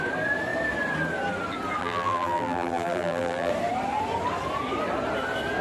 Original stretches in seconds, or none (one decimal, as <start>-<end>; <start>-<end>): 0.0-1.8; 3.5-5.6